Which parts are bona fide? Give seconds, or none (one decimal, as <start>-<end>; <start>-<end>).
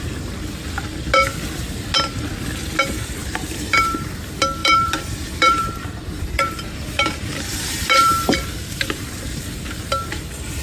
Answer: 0.0-3.2; 4.1-4.6; 9.4-10.6